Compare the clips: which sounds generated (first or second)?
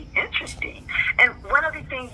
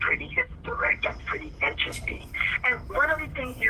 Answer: second